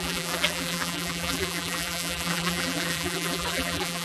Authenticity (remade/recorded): remade